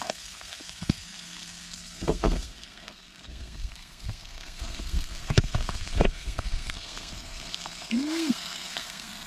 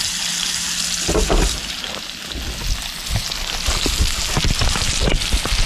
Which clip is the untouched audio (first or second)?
second